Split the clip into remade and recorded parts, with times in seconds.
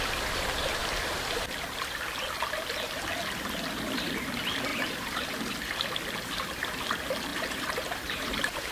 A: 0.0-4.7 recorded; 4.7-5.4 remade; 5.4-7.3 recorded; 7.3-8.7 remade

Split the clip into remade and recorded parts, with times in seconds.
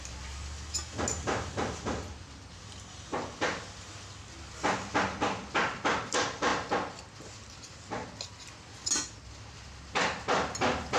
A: 0.0-11.0 recorded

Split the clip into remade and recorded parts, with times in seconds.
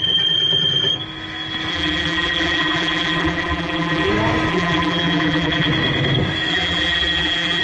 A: 0.0-1.7 recorded; 1.7-4.1 remade; 4.1-4.5 recorded; 4.5-5.7 remade; 5.7-6.5 recorded; 6.5-7.6 remade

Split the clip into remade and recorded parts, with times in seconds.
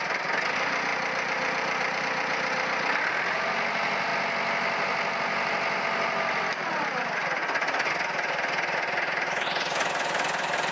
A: 0.0-0.9 recorded; 0.9-2.0 remade; 2.0-10.7 recorded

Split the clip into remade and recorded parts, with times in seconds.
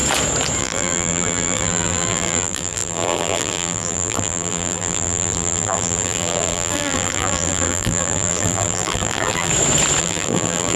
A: 0.0-0.6 recorded; 0.6-9.5 remade; 9.5-10.0 recorded; 10.0-10.8 remade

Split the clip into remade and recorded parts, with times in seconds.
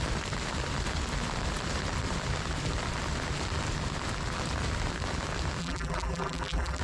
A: 0.0-5.6 recorded; 5.6-6.8 remade